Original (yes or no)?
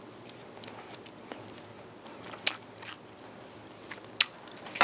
yes